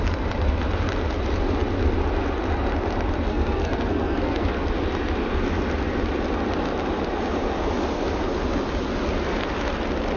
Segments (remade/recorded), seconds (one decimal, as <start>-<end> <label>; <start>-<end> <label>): 0.0-3.3 recorded; 3.3-4.7 remade; 4.7-10.2 recorded